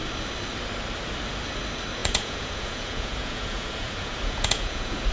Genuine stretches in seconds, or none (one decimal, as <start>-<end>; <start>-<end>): 0.0-2.0